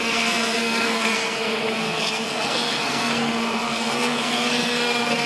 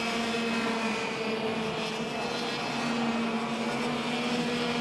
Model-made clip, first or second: first